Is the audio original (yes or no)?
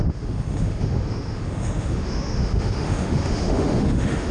no